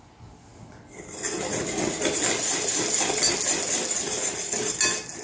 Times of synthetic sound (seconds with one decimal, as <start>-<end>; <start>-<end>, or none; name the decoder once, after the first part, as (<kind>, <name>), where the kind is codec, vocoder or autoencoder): none